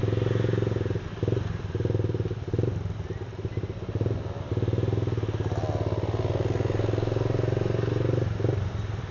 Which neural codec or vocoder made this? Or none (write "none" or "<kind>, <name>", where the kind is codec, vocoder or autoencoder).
none